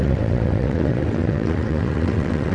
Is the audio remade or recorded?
remade